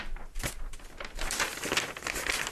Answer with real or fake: real